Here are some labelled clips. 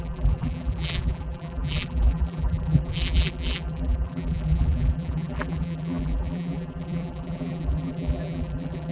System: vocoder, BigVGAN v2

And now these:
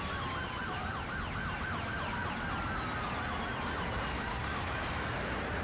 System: none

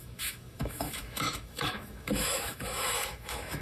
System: autoencoder, DAC-VAE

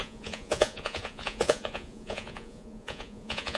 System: vocoder, Vocos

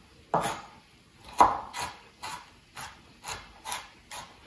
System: none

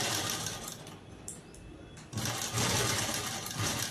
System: none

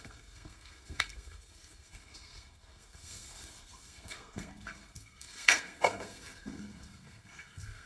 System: codec, SNAC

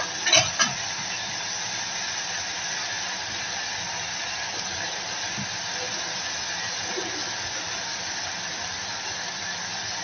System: none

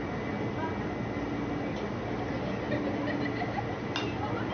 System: none